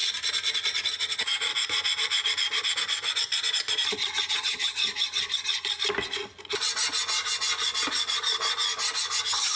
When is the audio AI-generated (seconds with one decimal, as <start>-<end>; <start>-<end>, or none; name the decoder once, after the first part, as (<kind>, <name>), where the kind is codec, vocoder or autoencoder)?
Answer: 0.9-1.5 (vocoder, HiFi-GAN); 4.3-4.8; 9.2-9.6